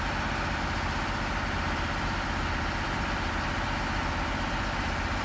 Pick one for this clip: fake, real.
real